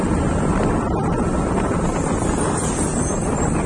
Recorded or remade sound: recorded